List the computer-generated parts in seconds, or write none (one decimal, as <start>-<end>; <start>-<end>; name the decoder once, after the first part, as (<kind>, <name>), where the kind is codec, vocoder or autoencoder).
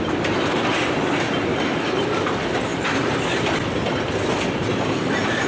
2.7-3.2 (vocoder, BigVGAN v2)